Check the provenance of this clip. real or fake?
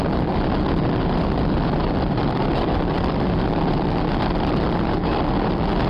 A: real